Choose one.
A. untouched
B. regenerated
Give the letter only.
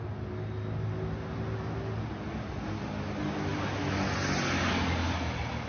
A